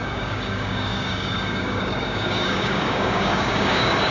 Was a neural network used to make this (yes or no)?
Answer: yes